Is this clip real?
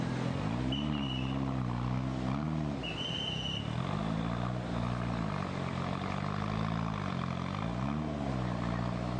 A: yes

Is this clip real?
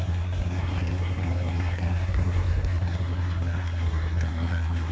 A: no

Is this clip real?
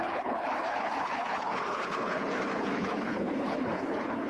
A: no